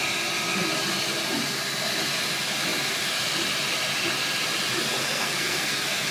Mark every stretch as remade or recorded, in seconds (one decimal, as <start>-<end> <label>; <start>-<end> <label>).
0.0-5.0 recorded; 5.0-6.1 remade